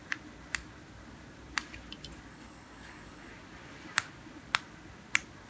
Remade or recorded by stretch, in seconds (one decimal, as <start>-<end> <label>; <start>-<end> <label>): 0.0-2.3 recorded; 2.3-3.3 remade; 3.3-5.5 recorded